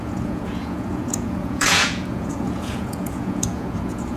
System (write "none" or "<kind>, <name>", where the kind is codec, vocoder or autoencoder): vocoder, Vocos